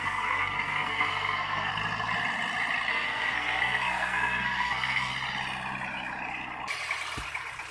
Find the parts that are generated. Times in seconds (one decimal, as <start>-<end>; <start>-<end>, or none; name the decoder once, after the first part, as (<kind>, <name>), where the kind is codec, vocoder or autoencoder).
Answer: 0.0-1.7 (codec, SNAC); 2.9-5.1